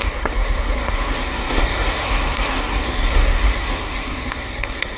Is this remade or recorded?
remade